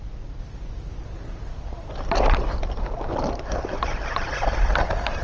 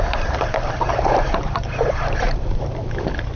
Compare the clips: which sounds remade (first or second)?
second